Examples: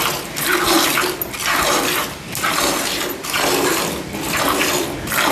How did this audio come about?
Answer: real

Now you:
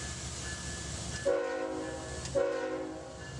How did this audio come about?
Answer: real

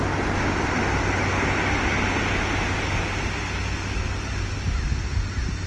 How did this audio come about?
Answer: real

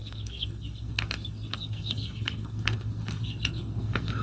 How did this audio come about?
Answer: fake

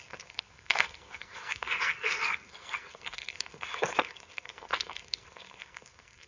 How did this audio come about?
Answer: fake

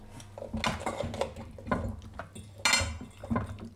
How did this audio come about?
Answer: real